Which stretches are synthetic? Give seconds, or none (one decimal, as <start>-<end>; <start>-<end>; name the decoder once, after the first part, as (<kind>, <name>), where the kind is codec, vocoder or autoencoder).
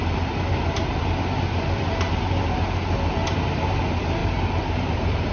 3.2-3.8 (vocoder, BigVGAN v2); 4.2-5.3